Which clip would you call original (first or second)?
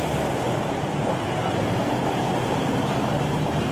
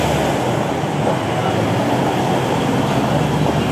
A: second